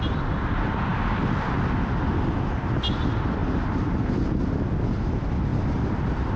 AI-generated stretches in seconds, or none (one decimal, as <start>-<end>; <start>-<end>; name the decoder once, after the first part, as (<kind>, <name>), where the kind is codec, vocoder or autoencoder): 0.0-0.9 (vocoder, BigVGAN v2); 3.0-3.4; 4.4-6.4